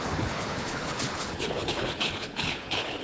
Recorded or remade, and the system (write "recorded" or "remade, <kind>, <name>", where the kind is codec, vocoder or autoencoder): remade, codec, HILCodec